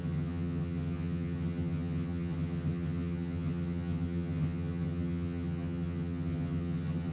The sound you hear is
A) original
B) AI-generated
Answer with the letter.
B